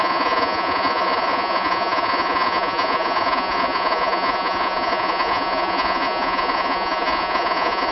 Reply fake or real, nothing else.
fake